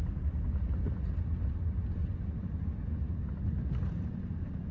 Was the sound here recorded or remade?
recorded